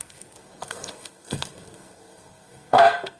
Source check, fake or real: fake